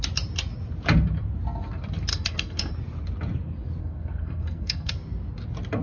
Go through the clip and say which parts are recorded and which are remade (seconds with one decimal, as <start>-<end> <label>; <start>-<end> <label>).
0.0-2.1 recorded; 2.1-2.7 remade; 2.7-3.8 recorded; 3.8-4.9 remade; 4.9-5.8 recorded